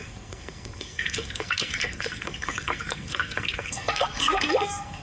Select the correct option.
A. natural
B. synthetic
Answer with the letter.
B